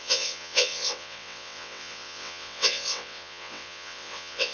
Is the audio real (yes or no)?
no